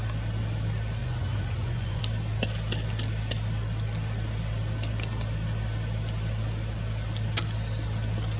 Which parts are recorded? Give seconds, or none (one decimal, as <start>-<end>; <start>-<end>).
0.0-1.0; 2.0-8.4